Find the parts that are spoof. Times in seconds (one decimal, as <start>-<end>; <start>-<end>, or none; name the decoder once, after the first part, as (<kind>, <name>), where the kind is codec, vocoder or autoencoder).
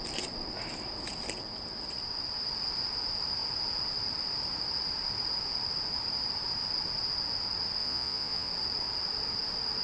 7.8-8.5 (vocoder, Vocos)